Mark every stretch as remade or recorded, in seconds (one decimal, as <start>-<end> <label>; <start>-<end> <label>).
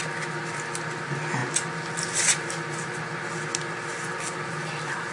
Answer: 0.0-5.1 recorded